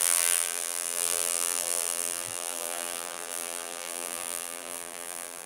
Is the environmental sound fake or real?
fake